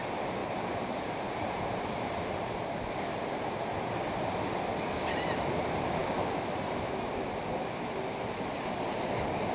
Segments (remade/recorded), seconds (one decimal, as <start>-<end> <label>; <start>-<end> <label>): 0.0-0.4 recorded; 0.4-3.9 remade; 3.9-9.5 recorded